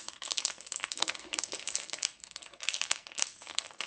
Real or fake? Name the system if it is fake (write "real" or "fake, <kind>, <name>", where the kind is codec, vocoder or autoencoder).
fake, codec, SNAC